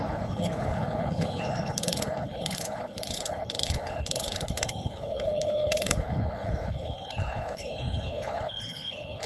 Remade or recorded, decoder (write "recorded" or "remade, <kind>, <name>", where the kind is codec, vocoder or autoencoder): remade, codec, HILCodec